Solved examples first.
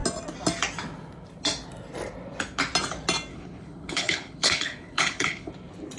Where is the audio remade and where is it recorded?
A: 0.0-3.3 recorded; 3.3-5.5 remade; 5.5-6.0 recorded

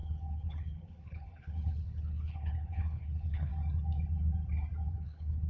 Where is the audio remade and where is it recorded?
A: 0.0-3.5 remade; 3.5-4.9 recorded; 4.9-5.5 remade

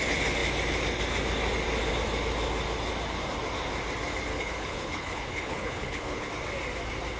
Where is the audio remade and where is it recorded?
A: 0.0-4.3 recorded; 4.3-6.3 remade; 6.3-7.2 recorded

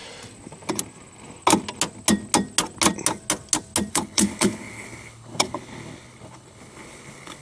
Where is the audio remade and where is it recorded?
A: 0.0-3.9 recorded; 3.9-7.4 remade

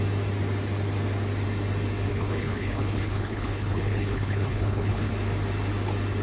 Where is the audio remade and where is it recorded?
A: 0.0-2.1 recorded; 2.1-5.1 remade; 5.1-6.2 recorded

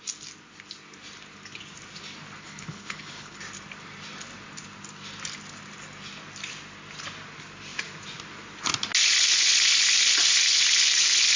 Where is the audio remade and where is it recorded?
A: 0.0-2.4 recorded; 2.4-3.4 remade; 3.4-11.4 recorded

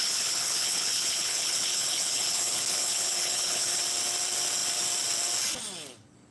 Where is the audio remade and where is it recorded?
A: 0.0-3.8 remade; 3.8-6.3 recorded